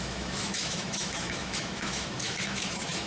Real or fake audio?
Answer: fake